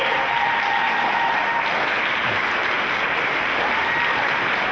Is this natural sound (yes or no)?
yes